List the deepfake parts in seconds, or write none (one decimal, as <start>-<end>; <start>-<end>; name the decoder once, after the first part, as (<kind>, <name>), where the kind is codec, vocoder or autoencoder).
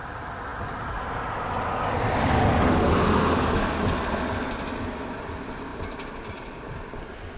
none